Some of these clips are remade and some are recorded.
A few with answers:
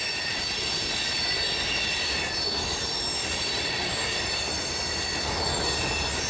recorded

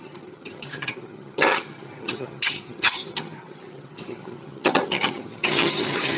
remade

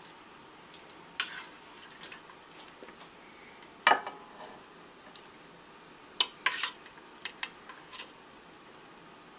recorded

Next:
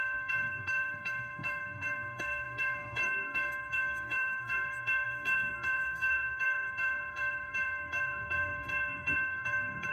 remade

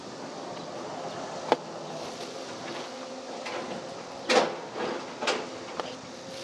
recorded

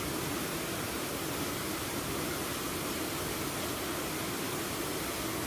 recorded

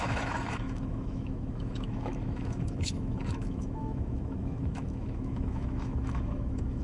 remade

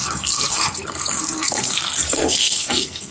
remade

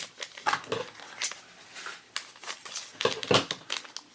recorded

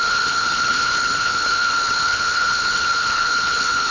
remade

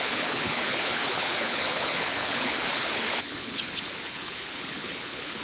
remade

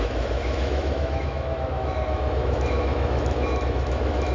remade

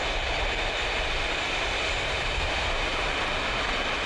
remade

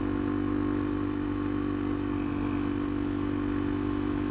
recorded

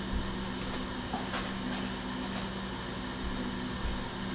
recorded